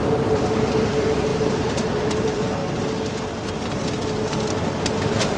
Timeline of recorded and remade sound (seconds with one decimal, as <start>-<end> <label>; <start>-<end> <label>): 0.0-0.8 recorded; 0.8-2.6 remade; 2.6-4.8 recorded; 4.8-5.4 remade